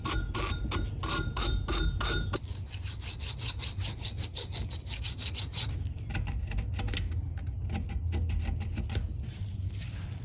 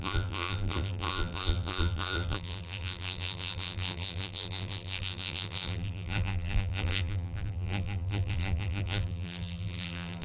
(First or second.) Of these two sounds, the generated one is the second